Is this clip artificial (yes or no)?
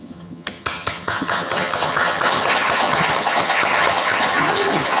yes